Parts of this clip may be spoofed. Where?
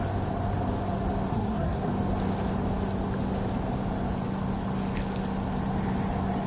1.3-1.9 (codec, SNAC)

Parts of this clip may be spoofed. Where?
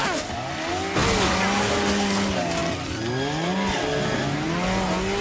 none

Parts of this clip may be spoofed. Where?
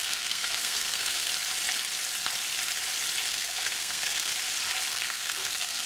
0.0-1.3 (codec, SNAC); 3.3-4.3; 4.9-5.9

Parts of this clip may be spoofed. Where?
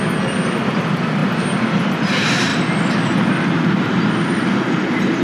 none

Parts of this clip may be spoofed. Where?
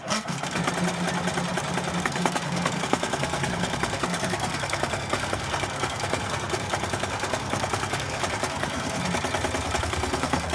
0.0-0.6 (codec, SNAC); 2.0-9.0; 9.8-10.5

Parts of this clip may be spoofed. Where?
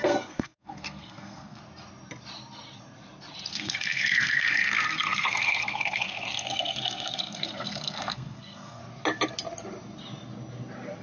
0.0-1.6 (codec, SNAC); 3.5-8.8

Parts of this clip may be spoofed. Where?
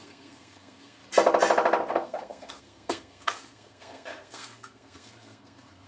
0.0-1.0 (codec, SNAC); 1.9-5.9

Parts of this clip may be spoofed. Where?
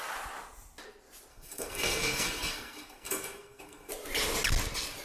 1.3-3.9 (codec, SNAC)